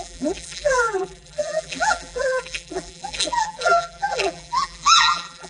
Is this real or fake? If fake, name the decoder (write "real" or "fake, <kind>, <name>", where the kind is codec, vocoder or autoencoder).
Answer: fake, vocoder, BigVGAN v2